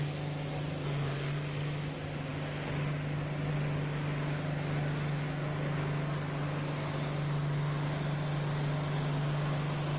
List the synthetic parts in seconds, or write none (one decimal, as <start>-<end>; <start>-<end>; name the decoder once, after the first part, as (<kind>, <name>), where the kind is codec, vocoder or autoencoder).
none